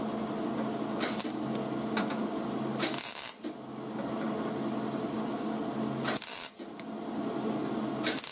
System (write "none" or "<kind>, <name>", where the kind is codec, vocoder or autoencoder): none